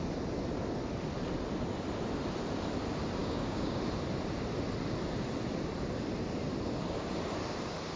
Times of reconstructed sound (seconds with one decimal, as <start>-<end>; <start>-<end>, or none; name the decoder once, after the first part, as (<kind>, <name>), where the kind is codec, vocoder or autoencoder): 3.2-3.8 (codec, DAC)